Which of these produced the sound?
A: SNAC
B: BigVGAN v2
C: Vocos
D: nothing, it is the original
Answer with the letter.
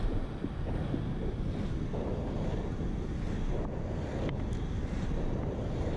D